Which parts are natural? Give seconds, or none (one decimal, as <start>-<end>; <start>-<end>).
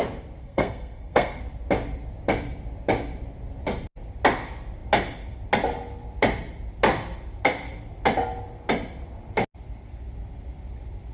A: 0.0-0.4; 1.4-11.1